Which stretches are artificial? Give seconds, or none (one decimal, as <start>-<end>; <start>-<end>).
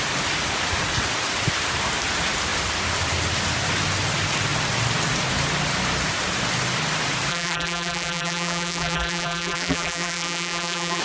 7.3-11.0